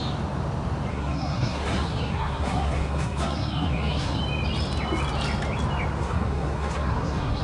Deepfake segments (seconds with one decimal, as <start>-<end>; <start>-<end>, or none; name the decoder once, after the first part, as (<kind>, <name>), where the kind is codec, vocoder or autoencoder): 0.9-4.2 (codec, SNAC); 6.0-7.4